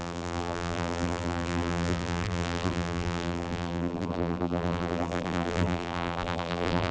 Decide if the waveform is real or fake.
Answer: fake